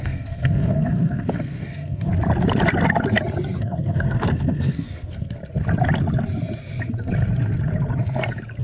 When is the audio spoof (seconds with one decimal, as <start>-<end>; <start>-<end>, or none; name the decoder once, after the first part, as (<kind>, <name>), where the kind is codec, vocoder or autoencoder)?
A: 0.0-2.1 (codec, SNAC); 3.6-5.4